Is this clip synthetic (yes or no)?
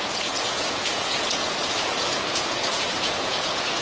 yes